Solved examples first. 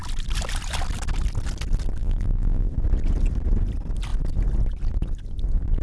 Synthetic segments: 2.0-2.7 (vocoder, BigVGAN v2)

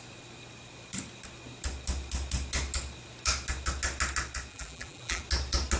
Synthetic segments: 4.5-5.2 (vocoder, BigVGAN v2)

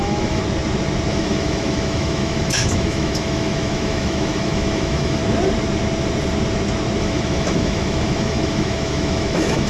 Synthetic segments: 0.0-0.4 (autoencoder, DAC-VAE); 1.1-5.2; 7.0-9.7

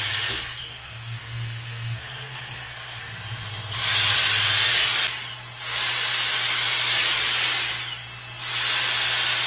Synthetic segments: 0.6-3.0 (codec, SNAC)